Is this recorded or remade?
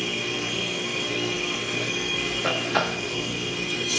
remade